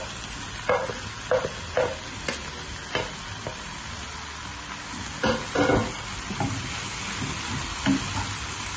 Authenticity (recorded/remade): recorded